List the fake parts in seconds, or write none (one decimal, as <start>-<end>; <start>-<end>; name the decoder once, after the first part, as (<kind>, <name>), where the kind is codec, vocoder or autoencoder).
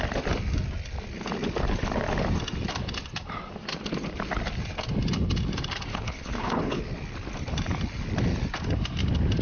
5.9-6.8 (codec, HILCodec)